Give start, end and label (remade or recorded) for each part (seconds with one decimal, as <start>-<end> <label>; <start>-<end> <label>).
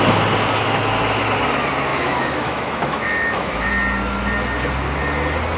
0.0-1.9 recorded; 1.9-3.7 remade; 3.7-5.6 recorded